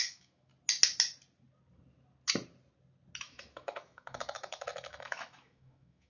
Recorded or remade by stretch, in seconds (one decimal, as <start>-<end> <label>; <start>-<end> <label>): 0.0-0.5 remade; 0.5-3.2 recorded; 3.2-6.1 remade